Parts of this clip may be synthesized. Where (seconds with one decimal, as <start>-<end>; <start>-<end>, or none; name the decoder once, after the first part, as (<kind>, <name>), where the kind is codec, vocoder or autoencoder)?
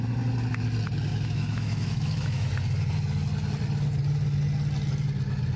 1.1-2.5 (autoencoder, DAC-VAE)